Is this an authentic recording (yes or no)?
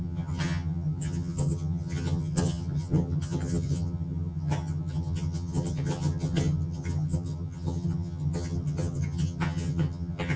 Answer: no